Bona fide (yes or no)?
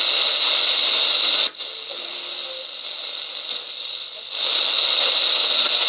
yes